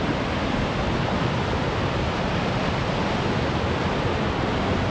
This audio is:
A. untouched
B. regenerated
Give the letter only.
A